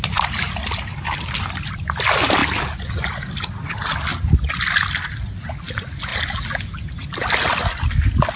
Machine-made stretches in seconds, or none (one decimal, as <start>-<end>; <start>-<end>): none